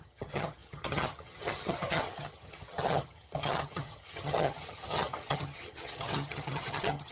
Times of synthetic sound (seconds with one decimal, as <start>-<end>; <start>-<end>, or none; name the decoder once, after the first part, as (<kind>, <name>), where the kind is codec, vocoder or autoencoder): 0.0-7.1 (vocoder, HiFi-GAN)